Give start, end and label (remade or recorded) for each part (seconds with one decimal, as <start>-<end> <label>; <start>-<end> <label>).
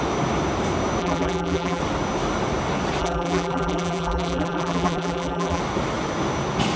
0.0-1.0 recorded; 1.0-1.8 remade; 1.8-3.0 recorded; 3.0-5.6 remade; 5.6-6.8 recorded